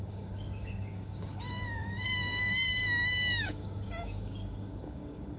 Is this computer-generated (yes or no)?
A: yes